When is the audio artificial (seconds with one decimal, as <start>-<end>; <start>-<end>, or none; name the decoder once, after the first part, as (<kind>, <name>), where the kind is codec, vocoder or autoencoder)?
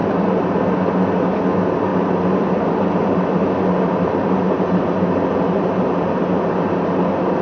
none